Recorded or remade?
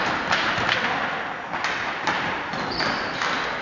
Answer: recorded